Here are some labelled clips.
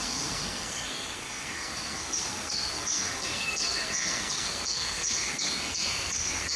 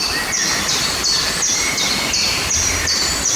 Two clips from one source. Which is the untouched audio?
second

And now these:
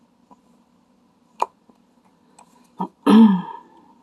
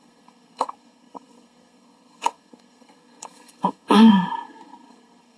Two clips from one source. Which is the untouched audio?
first